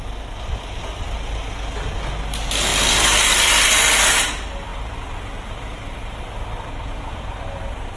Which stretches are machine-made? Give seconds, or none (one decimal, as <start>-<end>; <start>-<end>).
none